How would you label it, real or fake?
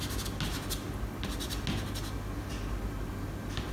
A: real